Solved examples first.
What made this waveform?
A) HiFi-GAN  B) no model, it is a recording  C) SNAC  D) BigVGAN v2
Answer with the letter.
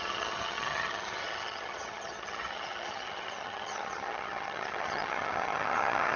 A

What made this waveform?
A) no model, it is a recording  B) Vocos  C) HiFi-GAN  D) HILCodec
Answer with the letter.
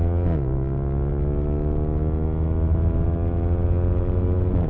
A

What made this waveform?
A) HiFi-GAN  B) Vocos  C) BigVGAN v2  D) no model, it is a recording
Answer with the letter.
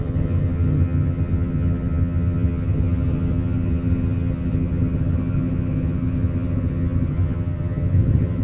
A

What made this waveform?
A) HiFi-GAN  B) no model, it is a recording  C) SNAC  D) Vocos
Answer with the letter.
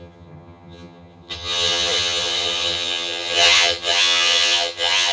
A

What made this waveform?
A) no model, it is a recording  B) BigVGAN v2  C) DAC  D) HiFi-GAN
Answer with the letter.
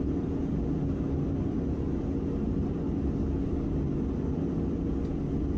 A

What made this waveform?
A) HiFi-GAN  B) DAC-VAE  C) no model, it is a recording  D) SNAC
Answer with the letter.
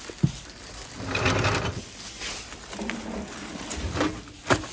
C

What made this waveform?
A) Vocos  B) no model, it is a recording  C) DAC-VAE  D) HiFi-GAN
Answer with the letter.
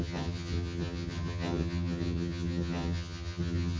D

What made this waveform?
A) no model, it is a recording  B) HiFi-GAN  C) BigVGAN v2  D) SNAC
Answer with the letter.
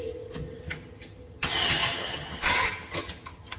B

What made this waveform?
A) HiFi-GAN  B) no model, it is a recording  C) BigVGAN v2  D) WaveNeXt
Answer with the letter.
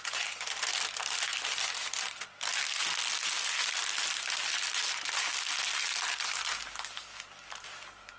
B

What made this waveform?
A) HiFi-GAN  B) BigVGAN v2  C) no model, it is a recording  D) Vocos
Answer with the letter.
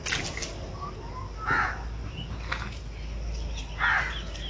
C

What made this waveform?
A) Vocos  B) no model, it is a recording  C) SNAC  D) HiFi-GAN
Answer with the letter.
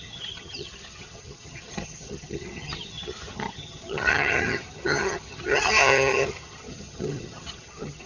D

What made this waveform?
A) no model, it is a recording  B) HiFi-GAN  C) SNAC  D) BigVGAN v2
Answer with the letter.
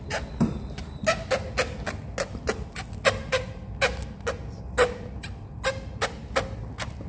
A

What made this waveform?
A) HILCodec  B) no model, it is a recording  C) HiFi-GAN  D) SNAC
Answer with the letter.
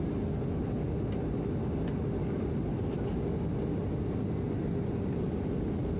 B